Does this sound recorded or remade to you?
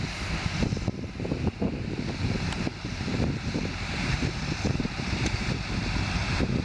remade